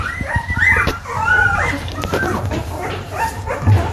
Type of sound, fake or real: fake